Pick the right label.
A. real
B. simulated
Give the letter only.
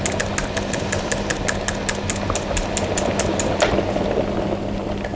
A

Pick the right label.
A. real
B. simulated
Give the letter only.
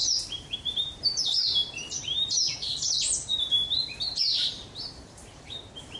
B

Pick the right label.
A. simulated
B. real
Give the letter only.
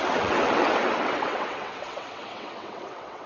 A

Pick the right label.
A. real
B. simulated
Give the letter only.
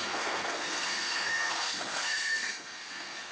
B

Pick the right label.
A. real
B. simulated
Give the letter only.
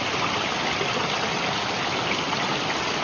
A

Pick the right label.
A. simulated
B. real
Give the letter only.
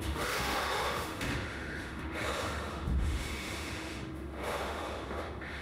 A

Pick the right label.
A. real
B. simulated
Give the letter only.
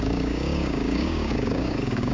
B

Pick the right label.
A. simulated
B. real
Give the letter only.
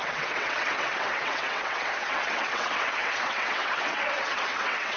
A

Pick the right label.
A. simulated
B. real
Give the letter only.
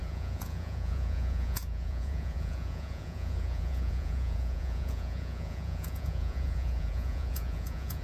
A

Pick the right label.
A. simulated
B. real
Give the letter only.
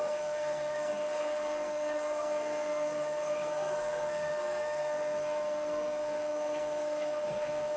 A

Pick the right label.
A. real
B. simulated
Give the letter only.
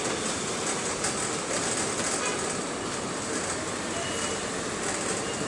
A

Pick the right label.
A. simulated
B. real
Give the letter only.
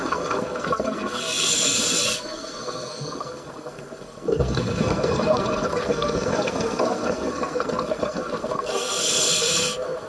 A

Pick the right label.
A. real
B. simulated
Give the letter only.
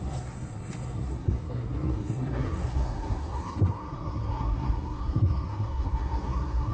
B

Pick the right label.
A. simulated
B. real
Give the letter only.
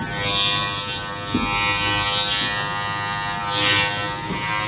B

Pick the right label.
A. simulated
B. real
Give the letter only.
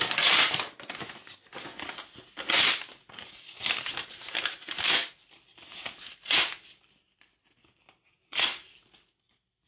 B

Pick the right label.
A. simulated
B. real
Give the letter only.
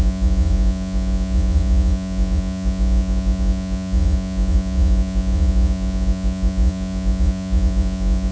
A